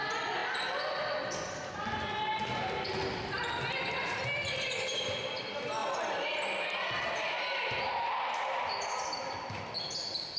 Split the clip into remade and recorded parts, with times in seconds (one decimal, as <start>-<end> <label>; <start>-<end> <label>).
0.0-10.4 recorded